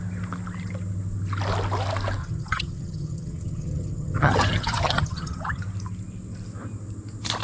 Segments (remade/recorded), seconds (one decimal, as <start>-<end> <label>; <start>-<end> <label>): 0.0-2.2 recorded; 2.2-5.6 remade; 5.6-7.4 recorded